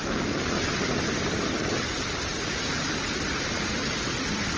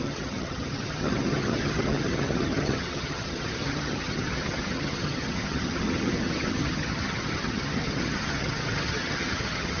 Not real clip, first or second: second